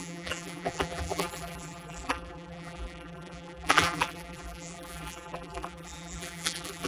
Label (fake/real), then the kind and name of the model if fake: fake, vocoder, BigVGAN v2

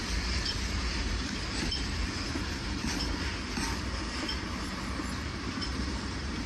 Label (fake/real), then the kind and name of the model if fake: fake, vocoder, BigVGAN v2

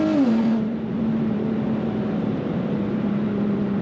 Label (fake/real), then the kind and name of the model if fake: fake, vocoder, BigVGAN v2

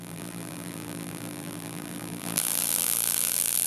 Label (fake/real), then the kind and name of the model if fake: fake, vocoder, BigVGAN v2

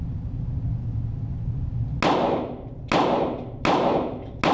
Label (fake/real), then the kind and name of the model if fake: real